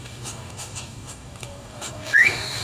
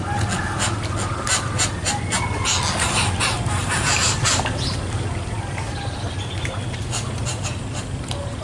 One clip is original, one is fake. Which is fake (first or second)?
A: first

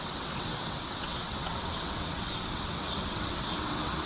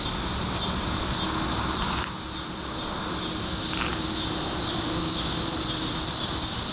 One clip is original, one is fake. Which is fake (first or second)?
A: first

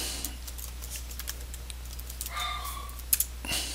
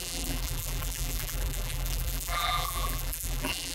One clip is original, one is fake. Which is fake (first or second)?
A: second